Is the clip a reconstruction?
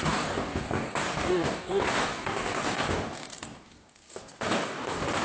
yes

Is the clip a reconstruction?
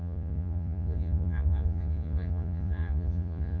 yes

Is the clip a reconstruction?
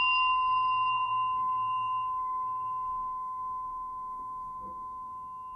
yes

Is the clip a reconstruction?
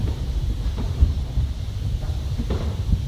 no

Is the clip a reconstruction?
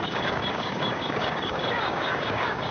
yes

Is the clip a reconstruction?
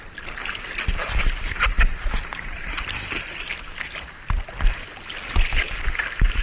no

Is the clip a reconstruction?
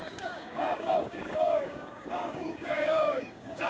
yes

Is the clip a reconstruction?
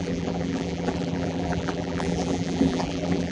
yes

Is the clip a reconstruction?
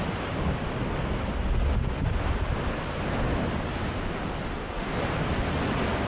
no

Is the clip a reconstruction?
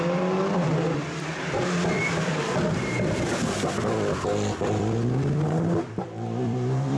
yes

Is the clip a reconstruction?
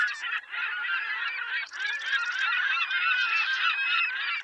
yes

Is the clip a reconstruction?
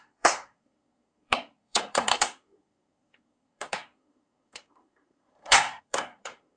yes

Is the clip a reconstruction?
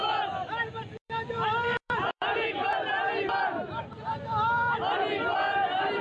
yes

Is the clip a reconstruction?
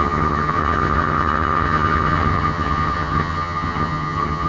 yes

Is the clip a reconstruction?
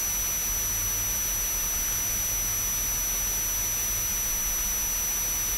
no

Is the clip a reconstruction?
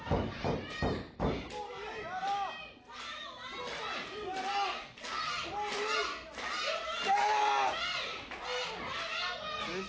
no